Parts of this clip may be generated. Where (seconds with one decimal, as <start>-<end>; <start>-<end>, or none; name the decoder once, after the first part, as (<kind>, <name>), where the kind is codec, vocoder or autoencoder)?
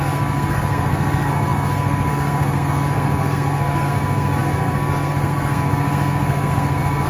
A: 0.0-7.1 (codec, SNAC)